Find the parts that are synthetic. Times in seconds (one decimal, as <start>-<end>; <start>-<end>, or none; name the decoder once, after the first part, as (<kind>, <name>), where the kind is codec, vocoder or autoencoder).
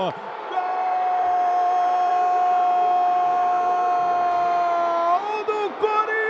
0.0-2.1 (vocoder, BigVGAN v2); 5.8-6.3